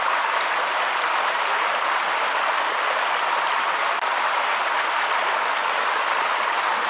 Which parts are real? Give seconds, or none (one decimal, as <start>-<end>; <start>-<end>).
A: 0.0-6.9

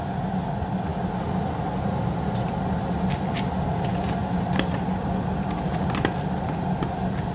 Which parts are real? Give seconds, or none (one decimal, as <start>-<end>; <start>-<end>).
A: 0.0-7.3